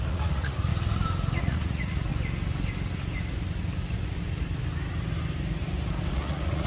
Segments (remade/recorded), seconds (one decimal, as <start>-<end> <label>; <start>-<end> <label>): 0.0-0.7 remade; 0.7-1.4 recorded; 1.4-2.1 remade; 2.1-6.1 recorded; 6.1-6.7 remade